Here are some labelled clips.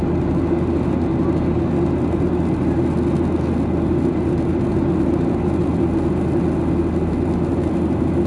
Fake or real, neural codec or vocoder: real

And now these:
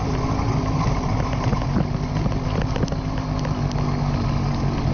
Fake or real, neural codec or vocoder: real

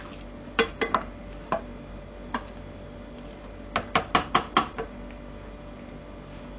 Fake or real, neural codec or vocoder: real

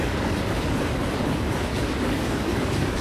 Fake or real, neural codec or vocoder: fake, codec, DAC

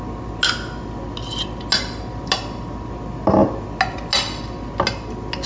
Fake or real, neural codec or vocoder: real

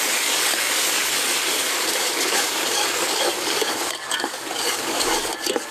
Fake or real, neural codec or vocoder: fake, codec, DAC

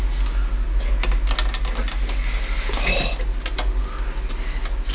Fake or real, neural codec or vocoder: real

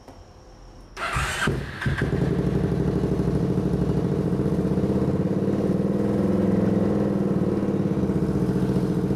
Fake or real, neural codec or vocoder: real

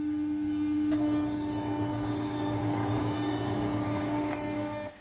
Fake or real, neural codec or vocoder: fake, codec, DAC